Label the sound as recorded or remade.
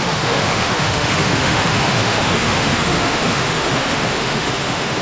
remade